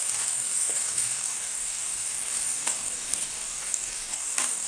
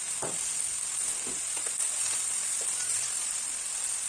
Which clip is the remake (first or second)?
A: first